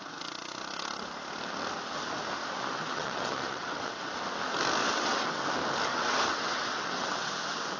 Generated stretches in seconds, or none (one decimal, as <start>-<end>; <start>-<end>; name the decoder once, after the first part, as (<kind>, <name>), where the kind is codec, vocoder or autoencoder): 2.8-4.1 (vocoder, WaveNeXt); 4.8-5.4; 5.9-7.3